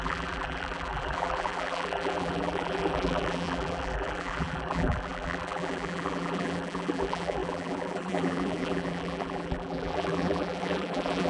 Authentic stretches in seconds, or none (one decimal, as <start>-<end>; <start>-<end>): none